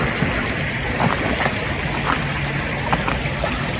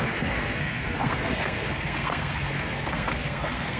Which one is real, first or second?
first